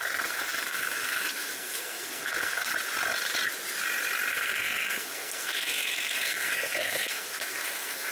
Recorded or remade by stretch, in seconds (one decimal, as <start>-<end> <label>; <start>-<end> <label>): 0.0-2.7 remade; 2.7-4.3 recorded; 4.3-8.1 remade